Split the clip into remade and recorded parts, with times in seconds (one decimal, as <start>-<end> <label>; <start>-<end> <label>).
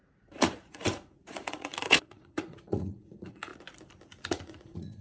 0.0-3.5 remade; 3.5-4.3 recorded; 4.3-5.0 remade